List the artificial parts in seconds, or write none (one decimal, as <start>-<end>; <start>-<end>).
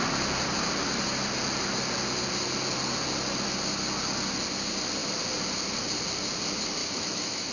6.8-7.5